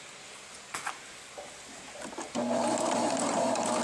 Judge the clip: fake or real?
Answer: real